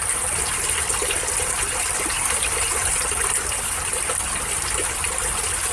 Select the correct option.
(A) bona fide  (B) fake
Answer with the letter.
A